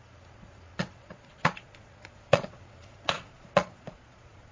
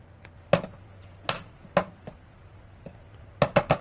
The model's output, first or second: first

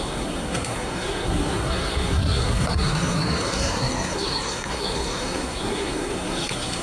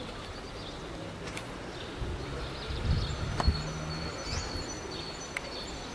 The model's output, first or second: first